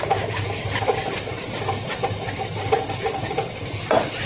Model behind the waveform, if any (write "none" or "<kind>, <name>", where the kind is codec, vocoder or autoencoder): none